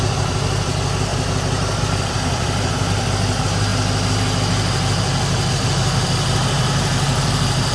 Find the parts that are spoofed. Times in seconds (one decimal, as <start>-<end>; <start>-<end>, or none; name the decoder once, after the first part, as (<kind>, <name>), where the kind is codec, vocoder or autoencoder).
0.0-3.7 (vocoder, BigVGAN v2); 5.5-7.7